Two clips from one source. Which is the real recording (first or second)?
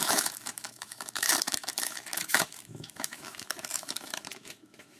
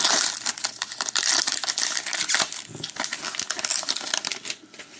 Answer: second